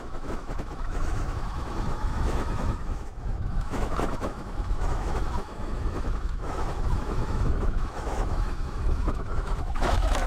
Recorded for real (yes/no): no